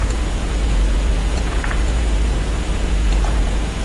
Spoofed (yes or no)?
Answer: yes